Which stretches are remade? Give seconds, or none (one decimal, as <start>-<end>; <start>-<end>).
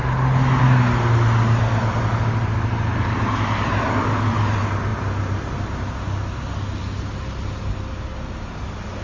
none